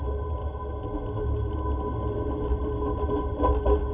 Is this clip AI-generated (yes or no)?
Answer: no